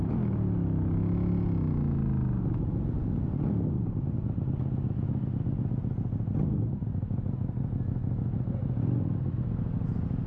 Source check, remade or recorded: recorded